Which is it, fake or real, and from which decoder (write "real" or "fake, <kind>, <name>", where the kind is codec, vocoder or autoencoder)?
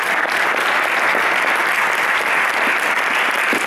real